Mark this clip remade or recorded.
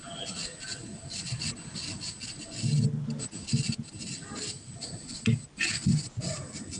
recorded